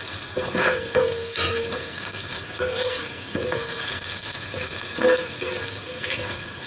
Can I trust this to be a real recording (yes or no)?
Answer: no